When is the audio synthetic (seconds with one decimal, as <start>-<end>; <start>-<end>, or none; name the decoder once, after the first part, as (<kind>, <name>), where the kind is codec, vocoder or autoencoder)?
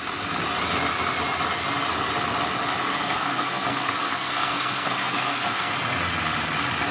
2.9-5.7 (codec, SNAC)